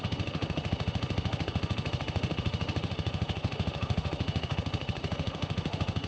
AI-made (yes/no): yes